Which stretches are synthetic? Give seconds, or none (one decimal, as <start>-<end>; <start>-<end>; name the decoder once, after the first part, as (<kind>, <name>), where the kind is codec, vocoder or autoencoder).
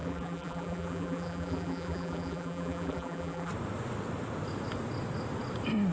0.0-3.5 (vocoder, BigVGAN v2)